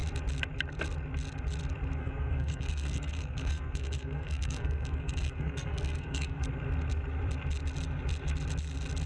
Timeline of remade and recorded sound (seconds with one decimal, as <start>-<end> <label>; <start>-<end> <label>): 0.0-2.0 recorded; 2.0-6.4 remade; 6.4-9.1 recorded